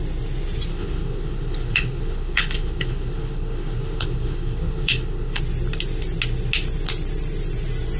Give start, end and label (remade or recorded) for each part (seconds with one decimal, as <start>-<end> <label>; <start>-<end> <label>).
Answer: 0.0-0.7 recorded; 0.7-5.4 remade; 5.4-8.0 recorded

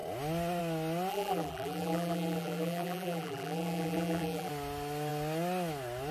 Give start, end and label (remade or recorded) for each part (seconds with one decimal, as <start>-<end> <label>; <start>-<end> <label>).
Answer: 0.0-1.1 recorded; 1.1-4.5 remade; 4.5-6.1 recorded

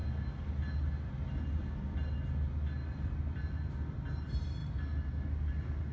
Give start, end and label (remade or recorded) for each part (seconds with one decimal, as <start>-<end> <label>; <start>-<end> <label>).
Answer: 0.0-5.9 recorded

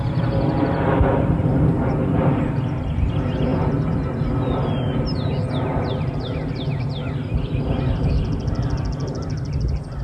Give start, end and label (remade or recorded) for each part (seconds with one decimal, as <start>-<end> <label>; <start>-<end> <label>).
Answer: 0.0-10.0 recorded